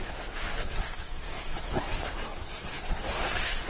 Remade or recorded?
remade